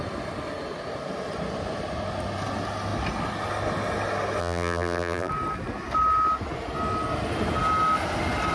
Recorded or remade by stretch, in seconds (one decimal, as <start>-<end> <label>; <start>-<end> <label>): 0.0-4.4 recorded; 4.4-5.3 remade; 5.3-8.5 recorded